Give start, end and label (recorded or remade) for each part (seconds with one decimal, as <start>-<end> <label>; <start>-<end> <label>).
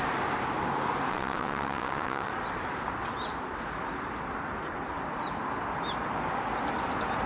0.0-1.1 recorded; 1.1-2.3 remade; 2.3-7.3 recorded